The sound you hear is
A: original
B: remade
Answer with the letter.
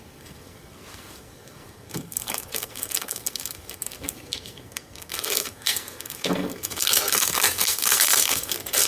B